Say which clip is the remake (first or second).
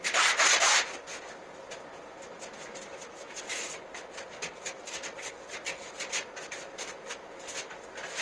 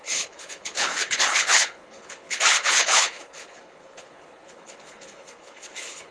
second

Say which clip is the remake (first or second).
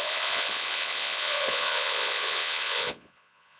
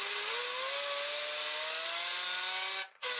first